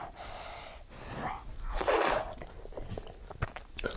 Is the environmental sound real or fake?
real